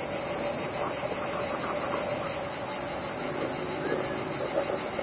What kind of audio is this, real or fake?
real